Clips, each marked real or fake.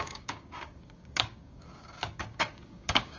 fake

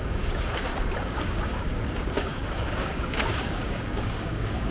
fake